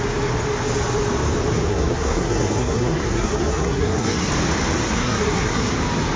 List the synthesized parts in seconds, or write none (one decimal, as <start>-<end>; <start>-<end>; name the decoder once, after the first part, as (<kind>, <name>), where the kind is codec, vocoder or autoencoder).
1.7-4.3 (codec, SNAC); 4.8-5.7